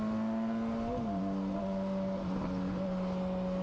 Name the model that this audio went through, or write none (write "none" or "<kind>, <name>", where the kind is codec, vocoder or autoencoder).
none